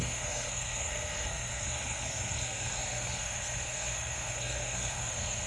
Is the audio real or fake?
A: fake